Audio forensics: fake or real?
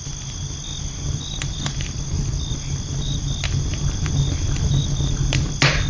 real